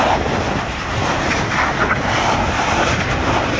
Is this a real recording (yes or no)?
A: yes